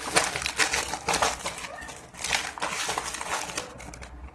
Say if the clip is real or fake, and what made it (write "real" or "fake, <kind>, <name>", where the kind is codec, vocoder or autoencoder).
real